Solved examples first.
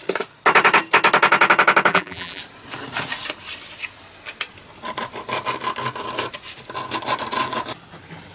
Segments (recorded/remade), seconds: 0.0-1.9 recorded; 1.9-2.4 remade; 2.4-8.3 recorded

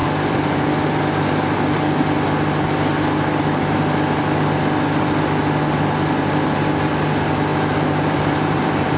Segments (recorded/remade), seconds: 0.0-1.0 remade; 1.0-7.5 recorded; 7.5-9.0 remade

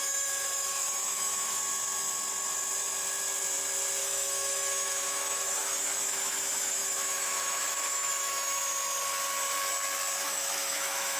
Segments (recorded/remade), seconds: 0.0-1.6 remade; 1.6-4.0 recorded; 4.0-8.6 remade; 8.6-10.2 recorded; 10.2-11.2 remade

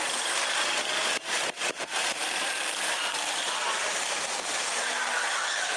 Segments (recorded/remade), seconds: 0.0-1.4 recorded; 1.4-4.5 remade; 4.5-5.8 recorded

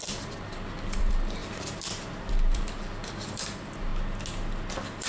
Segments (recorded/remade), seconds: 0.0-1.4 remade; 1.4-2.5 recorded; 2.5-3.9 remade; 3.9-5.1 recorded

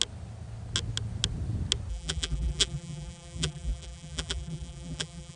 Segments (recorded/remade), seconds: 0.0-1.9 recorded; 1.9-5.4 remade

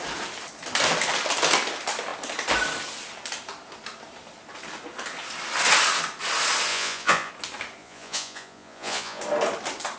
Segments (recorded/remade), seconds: 0.0-6.7 recorded; 6.7-7.3 remade; 7.3-7.8 recorded; 7.8-9.2 remade; 9.2-10.0 recorded

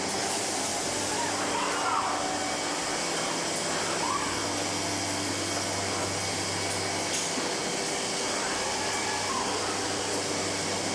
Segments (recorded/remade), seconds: 0.0-10.9 recorded